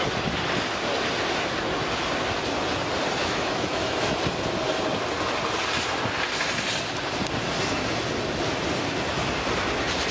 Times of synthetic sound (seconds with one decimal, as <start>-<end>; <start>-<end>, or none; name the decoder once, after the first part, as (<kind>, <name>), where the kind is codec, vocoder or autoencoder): 3.2-4.0 (autoencoder, DAC-VAE)